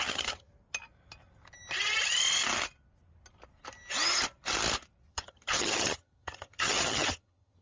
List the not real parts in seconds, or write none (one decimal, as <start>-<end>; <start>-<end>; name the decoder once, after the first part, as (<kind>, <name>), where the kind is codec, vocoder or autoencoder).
0.0-0.5 (vocoder, HiFi-GAN); 5.1-7.6